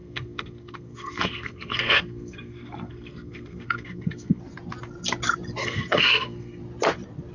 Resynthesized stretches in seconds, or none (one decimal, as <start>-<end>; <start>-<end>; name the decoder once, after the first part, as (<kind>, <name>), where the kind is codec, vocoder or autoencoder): 0.0-4.4 (codec, SNAC); 5.6-6.6